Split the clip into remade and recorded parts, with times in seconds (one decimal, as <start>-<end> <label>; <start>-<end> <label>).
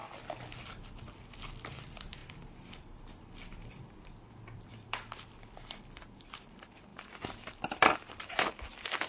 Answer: 0.0-0.8 recorded; 0.8-6.9 remade; 6.9-7.6 recorded; 7.6-9.1 remade